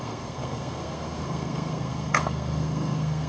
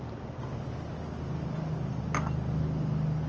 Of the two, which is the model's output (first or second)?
first